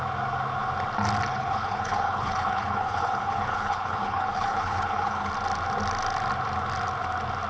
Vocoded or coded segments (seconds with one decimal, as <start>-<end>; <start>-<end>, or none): 1.3-5.3